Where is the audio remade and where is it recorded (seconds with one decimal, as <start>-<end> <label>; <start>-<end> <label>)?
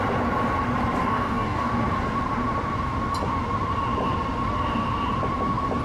0.0-1.0 recorded; 1.0-1.7 remade; 1.7-5.8 recorded